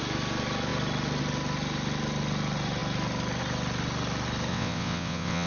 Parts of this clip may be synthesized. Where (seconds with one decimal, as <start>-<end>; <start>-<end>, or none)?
4.5-5.5